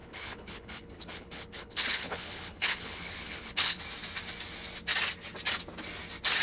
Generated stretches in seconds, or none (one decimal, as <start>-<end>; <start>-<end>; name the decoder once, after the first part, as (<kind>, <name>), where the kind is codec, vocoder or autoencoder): 0.0-3.8 (codec, HILCodec)